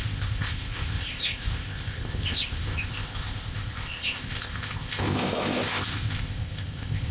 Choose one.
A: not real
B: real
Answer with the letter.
A